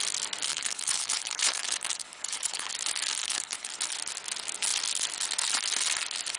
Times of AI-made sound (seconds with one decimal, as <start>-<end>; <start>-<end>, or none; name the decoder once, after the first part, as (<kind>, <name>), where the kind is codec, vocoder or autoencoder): 0.5-2.7 (codec, HILCodec); 3.2-3.7